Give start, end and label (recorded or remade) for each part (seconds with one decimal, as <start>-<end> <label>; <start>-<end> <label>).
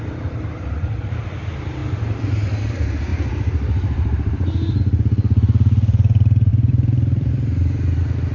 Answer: 0.0-3.1 recorded; 3.1-4.8 remade; 4.8-6.5 recorded; 6.5-7.3 remade; 7.3-8.3 recorded